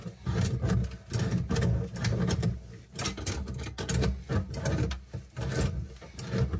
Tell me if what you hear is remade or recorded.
recorded